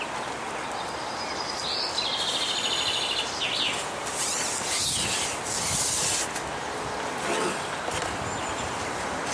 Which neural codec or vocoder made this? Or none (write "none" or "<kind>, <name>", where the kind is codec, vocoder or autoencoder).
none